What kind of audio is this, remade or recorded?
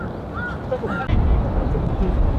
recorded